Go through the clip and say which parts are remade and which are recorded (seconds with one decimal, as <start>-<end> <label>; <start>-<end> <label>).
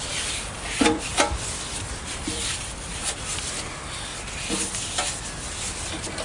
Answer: 0.0-1.1 remade; 1.1-1.7 recorded; 1.7-4.1 remade; 4.1-6.2 recorded